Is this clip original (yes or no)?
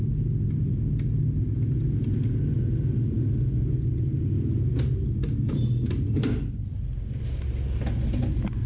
yes